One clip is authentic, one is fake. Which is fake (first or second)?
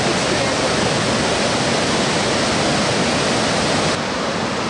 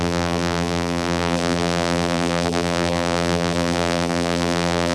second